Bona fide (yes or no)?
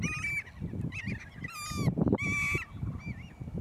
yes